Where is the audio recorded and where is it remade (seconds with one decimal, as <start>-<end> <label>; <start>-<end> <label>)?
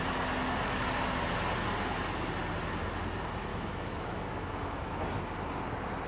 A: 0.0-3.5 recorded; 3.5-5.0 remade; 5.0-6.1 recorded